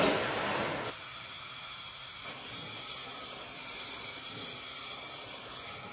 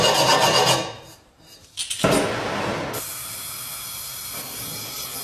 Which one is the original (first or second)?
second